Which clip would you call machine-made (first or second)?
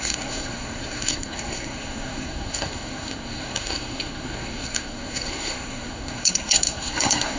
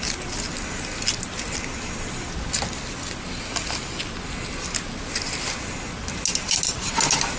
first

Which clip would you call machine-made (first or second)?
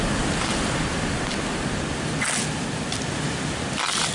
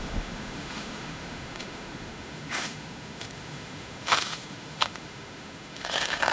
second